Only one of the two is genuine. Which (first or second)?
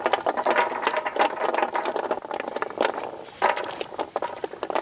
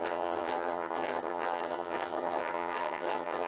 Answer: first